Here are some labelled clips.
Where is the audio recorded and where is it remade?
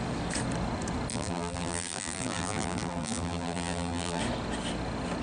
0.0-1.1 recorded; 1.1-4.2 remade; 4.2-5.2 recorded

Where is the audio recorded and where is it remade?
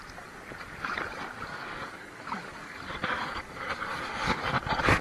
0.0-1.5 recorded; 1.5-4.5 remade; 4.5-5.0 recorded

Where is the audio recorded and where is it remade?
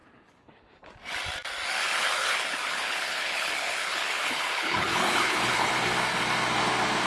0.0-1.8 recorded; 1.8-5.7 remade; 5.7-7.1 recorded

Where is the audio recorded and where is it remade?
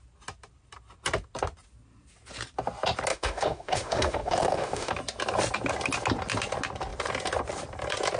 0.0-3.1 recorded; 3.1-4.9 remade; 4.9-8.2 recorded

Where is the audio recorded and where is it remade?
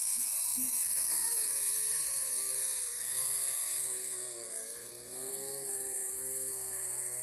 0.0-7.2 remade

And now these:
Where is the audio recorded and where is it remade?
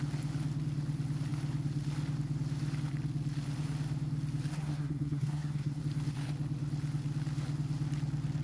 0.0-4.5 recorded; 4.5-5.8 remade; 5.8-8.4 recorded